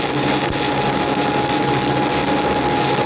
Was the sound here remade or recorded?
recorded